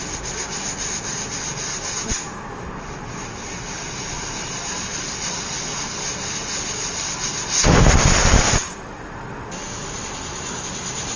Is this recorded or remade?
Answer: recorded